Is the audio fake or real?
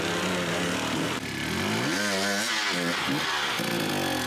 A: real